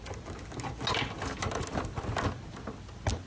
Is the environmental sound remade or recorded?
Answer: recorded